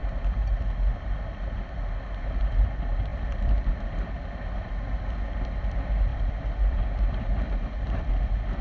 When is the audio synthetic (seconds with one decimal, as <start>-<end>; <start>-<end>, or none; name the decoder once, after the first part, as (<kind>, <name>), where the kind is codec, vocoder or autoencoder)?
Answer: 3.1-3.7 (vocoder, BigVGAN v2); 6.1-8.1